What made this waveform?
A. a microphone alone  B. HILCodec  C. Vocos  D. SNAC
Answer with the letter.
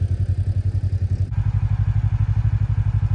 A